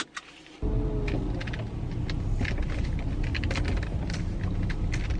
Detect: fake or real real